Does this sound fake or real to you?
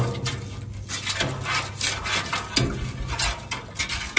real